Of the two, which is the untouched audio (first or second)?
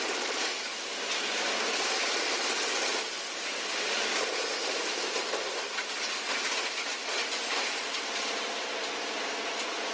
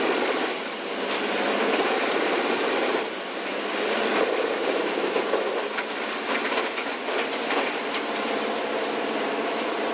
first